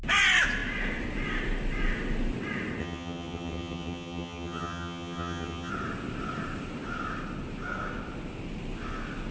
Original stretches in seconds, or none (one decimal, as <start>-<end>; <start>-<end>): 0.0-2.8; 5.7-9.3